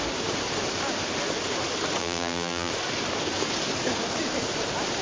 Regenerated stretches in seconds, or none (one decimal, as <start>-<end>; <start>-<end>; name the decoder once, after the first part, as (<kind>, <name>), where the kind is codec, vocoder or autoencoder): 2.0-2.7 (vocoder, BigVGAN v2)